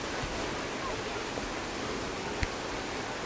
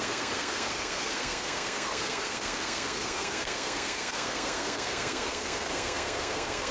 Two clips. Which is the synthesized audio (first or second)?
second